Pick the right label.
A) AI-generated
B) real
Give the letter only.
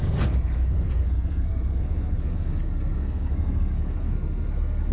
A